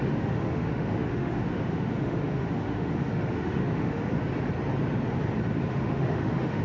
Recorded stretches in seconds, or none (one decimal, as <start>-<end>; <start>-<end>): 4.2-5.7